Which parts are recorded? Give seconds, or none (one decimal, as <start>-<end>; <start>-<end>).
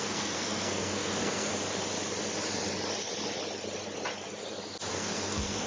1.5-4.9